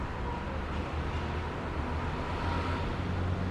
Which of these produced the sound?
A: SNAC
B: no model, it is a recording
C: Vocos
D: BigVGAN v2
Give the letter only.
B